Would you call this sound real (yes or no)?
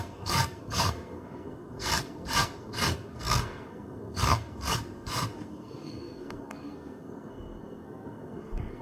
no